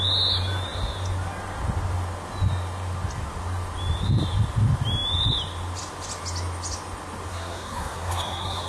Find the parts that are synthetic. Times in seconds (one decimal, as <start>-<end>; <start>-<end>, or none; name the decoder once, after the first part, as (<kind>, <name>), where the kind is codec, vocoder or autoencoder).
7.3-8.7 (codec, SNAC)